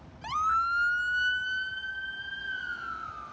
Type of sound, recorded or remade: recorded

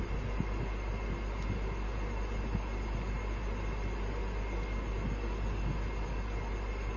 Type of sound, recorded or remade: recorded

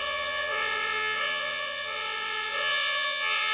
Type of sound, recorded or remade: remade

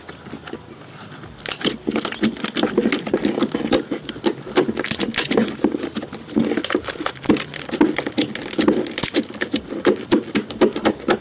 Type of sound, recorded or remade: recorded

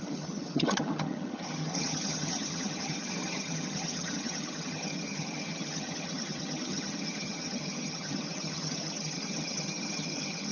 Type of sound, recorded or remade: remade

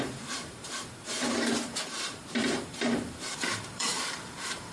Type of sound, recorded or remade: remade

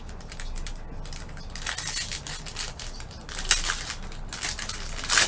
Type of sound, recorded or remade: recorded